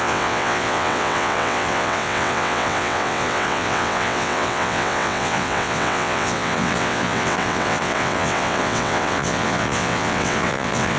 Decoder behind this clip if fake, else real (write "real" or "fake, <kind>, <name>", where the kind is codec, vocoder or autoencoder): fake, vocoder, WaveNeXt